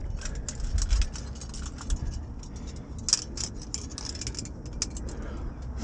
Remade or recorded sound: recorded